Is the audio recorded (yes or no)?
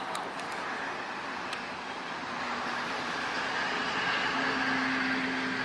yes